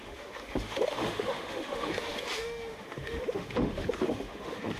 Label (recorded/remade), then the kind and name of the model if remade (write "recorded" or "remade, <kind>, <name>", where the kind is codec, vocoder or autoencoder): remade, autoencoder, DAC-VAE